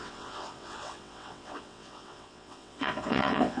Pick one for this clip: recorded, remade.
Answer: remade